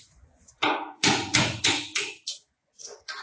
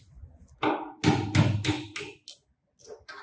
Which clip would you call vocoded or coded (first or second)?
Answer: first